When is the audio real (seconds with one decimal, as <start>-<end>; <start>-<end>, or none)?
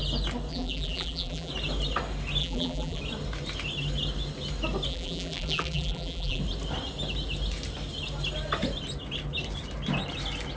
0.0-0.5; 1.5-2.4; 3.0-4.9; 6.4-10.6